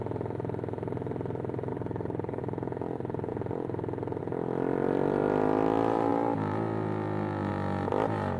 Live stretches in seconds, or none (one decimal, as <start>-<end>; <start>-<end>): 0.0-1.7; 2.4-8.4